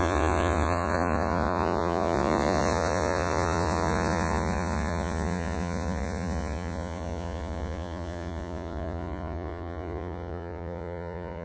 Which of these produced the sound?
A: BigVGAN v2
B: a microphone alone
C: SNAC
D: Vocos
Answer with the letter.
D